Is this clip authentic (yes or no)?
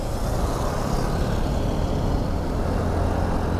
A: yes